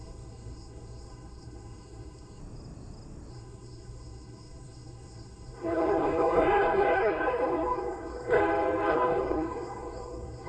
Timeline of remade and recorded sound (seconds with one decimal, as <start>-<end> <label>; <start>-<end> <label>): 0.0-2.4 remade; 2.4-3.3 recorded; 3.3-8.4 remade; 8.4-8.9 recorded; 8.9-10.5 remade